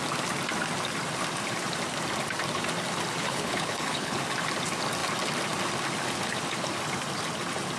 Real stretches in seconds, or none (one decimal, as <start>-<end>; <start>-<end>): 0.0-3.2; 4.2-7.8